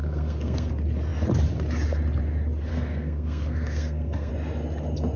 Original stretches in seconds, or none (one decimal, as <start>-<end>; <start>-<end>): 0.7-2.7; 4.3-5.2